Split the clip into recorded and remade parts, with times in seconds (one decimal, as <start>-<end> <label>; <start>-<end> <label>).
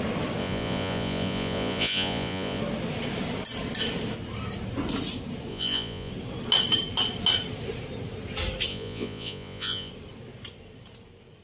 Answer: 0.0-0.4 recorded; 0.4-2.6 remade; 2.6-5.5 recorded; 5.5-6.1 remade; 6.1-8.7 recorded; 8.7-9.9 remade; 9.9-11.4 recorded